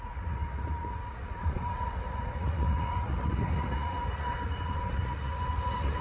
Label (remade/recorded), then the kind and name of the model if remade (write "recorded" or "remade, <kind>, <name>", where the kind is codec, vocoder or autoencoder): remade, vocoder, Vocos